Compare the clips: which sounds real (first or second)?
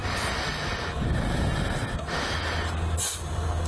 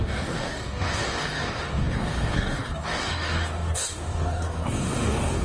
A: first